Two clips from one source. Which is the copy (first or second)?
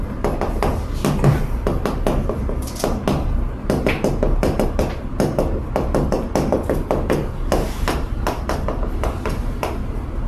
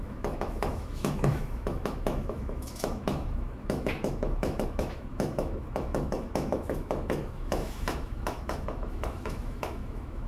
second